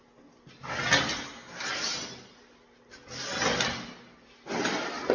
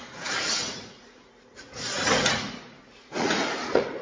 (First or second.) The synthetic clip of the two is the second